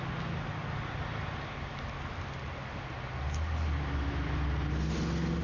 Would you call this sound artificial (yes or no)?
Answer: no